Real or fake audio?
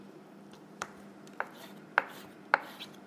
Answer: real